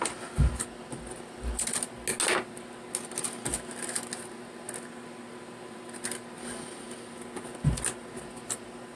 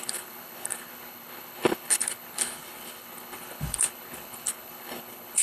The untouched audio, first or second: first